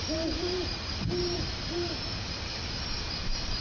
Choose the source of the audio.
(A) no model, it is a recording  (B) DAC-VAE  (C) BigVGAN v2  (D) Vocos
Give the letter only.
C